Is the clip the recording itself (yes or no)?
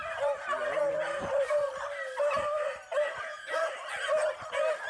yes